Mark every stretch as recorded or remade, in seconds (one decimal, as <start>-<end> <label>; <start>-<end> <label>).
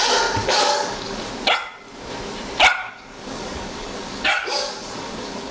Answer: 0.0-0.4 recorded; 0.4-1.3 remade; 1.3-2.8 recorded; 2.8-5.5 remade